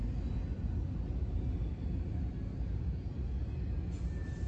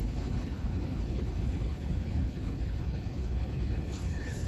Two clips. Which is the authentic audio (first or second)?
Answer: first